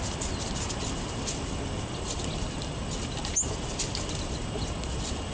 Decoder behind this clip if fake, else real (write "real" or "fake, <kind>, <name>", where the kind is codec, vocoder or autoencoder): real